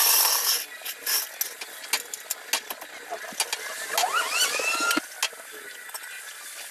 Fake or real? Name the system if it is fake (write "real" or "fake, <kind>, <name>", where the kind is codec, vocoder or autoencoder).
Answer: real